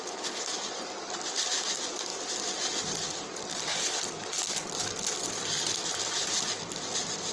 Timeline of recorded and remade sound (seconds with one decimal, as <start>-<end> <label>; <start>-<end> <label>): 0.0-7.3 recorded